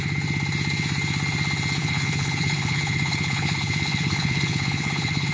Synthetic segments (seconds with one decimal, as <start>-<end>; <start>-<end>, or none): 1.8-5.3